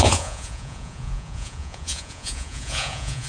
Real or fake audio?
fake